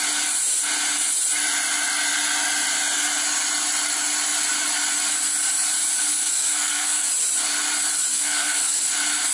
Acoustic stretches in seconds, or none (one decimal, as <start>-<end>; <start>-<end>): 0.0-6.0; 7.1-8.1; 8.8-9.3